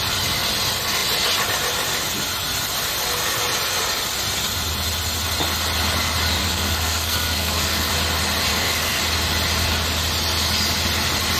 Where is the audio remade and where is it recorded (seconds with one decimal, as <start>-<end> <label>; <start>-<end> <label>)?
0.0-6.4 recorded; 6.4-7.9 remade; 7.9-8.5 recorded; 8.5-9.0 remade; 9.0-11.4 recorded